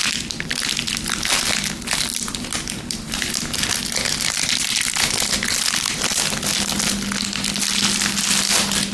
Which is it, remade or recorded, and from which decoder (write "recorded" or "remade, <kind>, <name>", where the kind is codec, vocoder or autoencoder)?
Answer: recorded